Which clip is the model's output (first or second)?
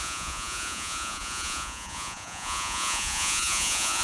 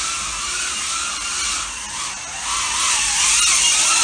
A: first